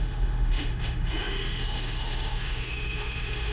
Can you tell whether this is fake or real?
fake